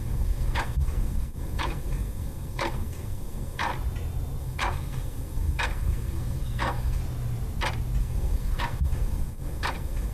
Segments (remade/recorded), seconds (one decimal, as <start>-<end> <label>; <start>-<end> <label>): 0.0-3.7 remade; 3.7-4.4 recorded; 4.4-7.0 remade; 7.0-8.0 recorded; 8.0-10.1 remade